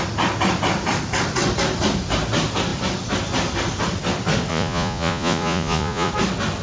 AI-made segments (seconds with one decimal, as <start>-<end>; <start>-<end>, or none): 4.5-6.1

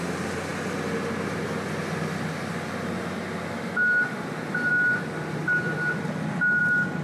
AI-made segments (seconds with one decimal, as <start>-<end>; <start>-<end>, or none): none

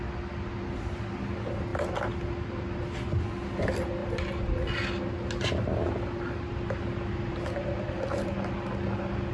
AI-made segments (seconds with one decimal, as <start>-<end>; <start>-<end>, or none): none

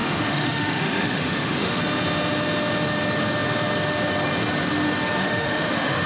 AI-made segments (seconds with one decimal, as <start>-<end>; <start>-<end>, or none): 0.0-1.8; 5.2-6.1

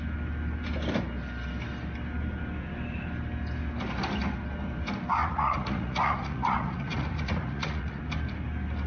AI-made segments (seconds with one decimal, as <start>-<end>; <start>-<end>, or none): 5.2-8.0

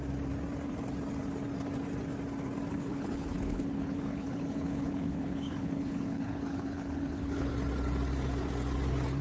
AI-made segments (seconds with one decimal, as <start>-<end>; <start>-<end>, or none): 2.7-7.5

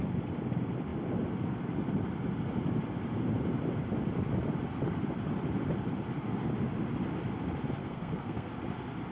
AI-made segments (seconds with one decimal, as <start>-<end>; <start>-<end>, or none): 7.8-8.5